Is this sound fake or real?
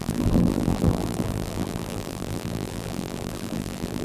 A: fake